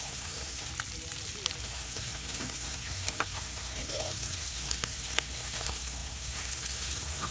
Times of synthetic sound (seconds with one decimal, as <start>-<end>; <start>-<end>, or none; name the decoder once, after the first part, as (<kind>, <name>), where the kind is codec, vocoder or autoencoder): 0.0-0.7 (codec, SNAC); 1.6-7.3